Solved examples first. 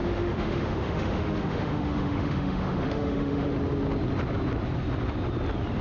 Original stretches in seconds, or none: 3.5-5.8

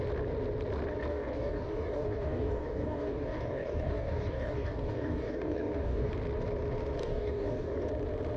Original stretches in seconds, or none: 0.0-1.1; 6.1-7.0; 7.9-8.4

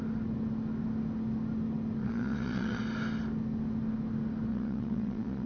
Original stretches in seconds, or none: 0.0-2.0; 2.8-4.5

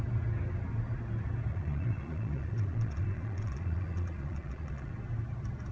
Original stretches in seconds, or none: 0.0-1.5; 4.9-5.7

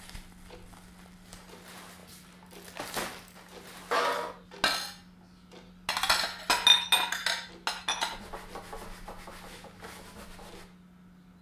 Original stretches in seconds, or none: 0.0-11.4

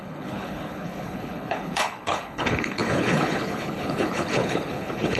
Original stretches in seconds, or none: none

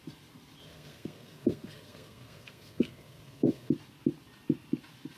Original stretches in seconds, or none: 0.0-0.6; 3.7-5.2

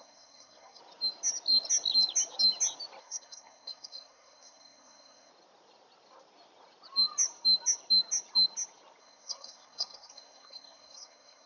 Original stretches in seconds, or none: 0.8-3.0; 5.3-9.0